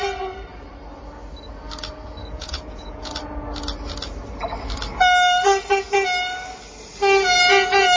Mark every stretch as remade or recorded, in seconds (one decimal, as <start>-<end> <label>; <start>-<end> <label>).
0.0-2.2 recorded; 2.2-3.1 remade; 3.1-8.0 recorded

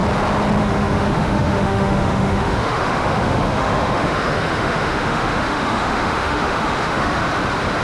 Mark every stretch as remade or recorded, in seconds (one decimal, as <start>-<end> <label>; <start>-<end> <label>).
0.0-0.6 recorded; 0.6-7.2 remade; 7.2-7.8 recorded

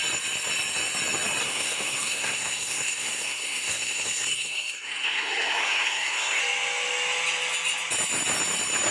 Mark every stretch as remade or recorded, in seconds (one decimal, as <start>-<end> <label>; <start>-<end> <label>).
0.0-1.4 recorded; 1.4-6.4 remade; 6.4-8.9 recorded